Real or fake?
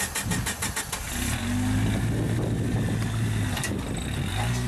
real